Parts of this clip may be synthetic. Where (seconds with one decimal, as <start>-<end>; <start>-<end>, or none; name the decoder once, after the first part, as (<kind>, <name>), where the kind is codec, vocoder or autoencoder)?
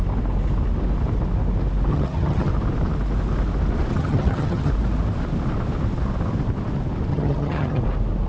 1.9-2.5 (vocoder, HiFi-GAN); 3.9-4.7; 7.1-7.8